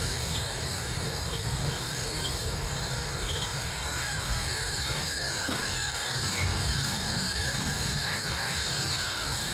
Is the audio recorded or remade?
remade